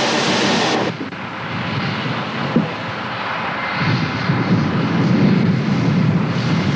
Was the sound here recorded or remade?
recorded